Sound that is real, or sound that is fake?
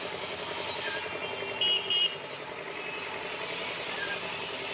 real